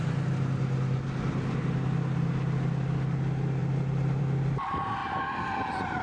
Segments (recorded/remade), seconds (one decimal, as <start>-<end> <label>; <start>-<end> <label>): 0.0-6.0 recorded